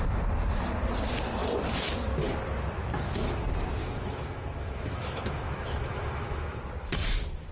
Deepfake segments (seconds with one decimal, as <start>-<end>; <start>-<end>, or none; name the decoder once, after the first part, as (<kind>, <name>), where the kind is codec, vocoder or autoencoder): 3.8-6.6 (autoencoder, DAC-VAE)